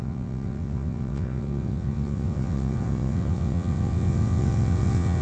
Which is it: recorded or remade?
remade